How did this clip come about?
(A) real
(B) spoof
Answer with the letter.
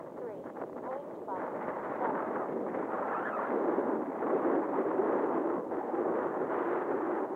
A